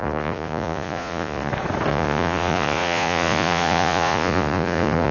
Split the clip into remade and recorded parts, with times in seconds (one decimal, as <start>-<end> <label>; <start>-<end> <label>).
0.0-1.5 remade; 1.5-1.9 recorded; 1.9-5.1 remade